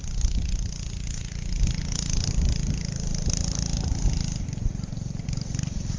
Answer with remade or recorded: recorded